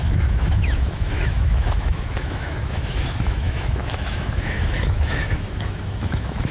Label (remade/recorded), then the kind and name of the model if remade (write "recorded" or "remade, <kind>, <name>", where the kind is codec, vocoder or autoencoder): remade, autoencoder, DAC-VAE